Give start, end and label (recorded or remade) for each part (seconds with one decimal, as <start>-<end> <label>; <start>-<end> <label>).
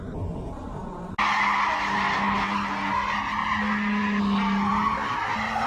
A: 0.0-5.7 recorded